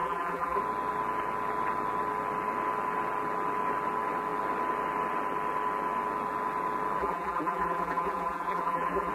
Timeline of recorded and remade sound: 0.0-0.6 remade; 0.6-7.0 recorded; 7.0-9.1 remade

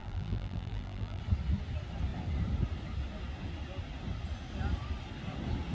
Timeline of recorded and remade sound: 0.0-1.2 remade; 1.2-5.7 recorded

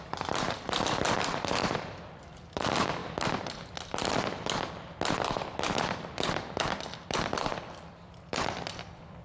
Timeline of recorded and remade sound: 0.0-3.0 remade; 3.0-5.3 recorded; 5.3-9.2 remade

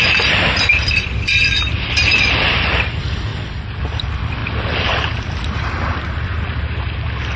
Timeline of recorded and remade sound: 0.0-4.4 remade; 4.4-7.4 recorded